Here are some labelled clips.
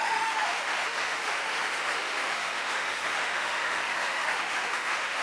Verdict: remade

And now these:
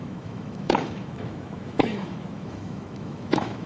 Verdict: remade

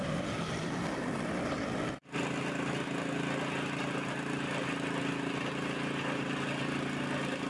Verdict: recorded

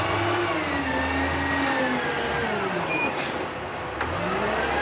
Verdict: recorded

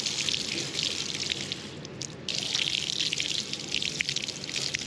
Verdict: recorded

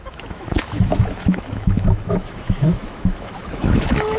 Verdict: remade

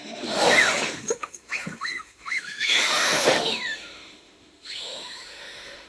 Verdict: remade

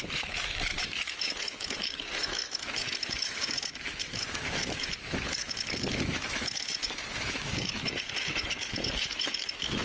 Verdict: remade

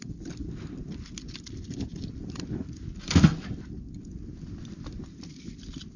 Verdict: recorded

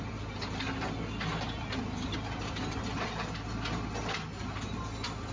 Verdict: recorded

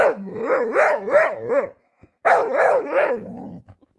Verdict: remade